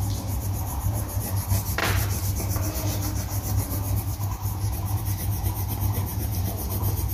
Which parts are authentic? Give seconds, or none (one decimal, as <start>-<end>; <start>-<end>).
0.0-0.7; 1.2-6.0; 6.5-7.1